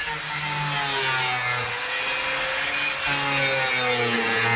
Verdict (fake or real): real